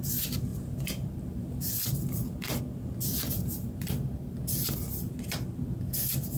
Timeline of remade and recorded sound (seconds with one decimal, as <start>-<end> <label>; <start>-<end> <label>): 0.0-0.5 recorded; 0.5-2.6 remade; 2.6-3.1 recorded; 3.1-4.4 remade; 4.4-6.4 recorded